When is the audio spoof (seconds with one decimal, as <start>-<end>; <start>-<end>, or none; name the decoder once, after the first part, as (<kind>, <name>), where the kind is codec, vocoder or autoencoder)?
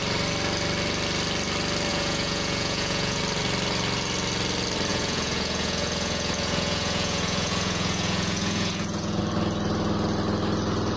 1.9-3.2 (vocoder, Vocos); 4.9-9.2